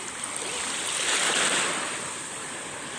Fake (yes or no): no